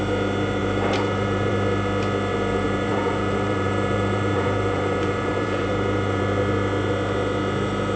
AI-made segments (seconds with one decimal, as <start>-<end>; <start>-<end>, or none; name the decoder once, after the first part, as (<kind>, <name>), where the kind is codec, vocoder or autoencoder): 0.6-1.5 (vocoder, BigVGAN v2); 2.3-6.2